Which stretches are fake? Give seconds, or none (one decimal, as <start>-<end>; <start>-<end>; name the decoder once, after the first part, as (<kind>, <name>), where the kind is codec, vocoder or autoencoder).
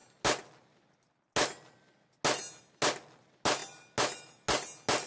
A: none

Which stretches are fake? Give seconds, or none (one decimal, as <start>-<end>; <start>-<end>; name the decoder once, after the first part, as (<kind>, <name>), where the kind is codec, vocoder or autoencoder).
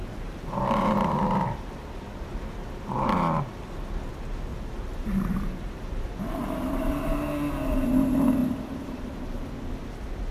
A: 0.0-0.6 (vocoder, BigVGAN v2); 4.5-6.1; 8.4-9.7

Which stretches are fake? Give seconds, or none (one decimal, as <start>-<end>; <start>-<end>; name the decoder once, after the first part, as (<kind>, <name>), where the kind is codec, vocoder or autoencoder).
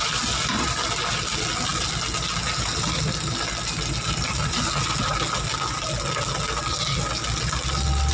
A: none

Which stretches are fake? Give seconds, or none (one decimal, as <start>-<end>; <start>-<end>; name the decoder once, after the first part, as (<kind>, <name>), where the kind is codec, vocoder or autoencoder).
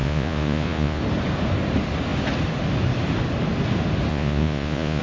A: 0.0-1.0 (vocoder, Vocos); 4.1-5.0